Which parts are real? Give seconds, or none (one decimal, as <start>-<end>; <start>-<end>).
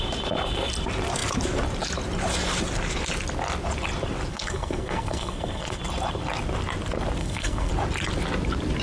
0.0-4.3; 5.8-7.2; 7.7-8.8